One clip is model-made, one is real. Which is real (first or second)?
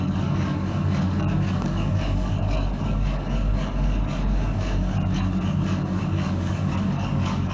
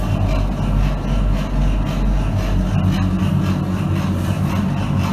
second